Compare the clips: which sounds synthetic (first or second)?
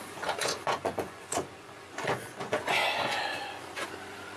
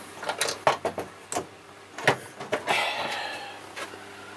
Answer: first